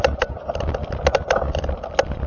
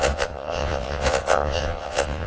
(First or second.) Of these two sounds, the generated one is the second